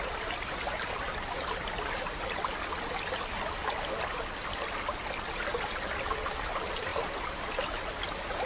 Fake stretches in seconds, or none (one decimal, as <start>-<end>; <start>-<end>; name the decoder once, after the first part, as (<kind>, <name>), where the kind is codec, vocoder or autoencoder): none

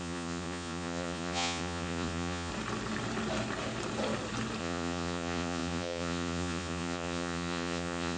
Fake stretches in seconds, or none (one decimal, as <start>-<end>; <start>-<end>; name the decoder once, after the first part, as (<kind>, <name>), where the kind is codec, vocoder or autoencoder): 0.0-2.5 (vocoder, Vocos); 4.6-8.2

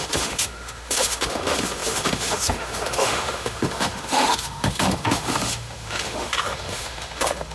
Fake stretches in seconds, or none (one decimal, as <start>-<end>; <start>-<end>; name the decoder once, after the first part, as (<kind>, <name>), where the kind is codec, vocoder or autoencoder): 0.0-7.5 (autoencoder, DAC-VAE)

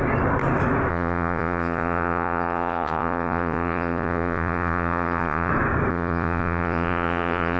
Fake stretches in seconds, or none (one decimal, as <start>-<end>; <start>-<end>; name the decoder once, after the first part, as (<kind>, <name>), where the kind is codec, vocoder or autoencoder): 0.9-5.5 (vocoder, Vocos); 5.9-7.6

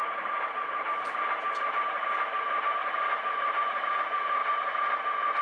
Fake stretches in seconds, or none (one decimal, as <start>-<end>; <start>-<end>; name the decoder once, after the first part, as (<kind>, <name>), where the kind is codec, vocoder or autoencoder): 0.0-4.4 (vocoder, BigVGAN v2)